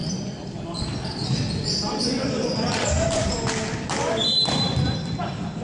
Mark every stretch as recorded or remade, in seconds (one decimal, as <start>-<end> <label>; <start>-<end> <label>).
0.0-2.9 remade; 2.9-5.6 recorded